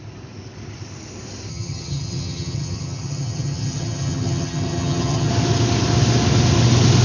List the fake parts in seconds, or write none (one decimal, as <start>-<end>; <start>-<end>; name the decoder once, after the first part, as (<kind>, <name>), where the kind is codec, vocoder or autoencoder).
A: 1.5-5.3 (vocoder, HiFi-GAN)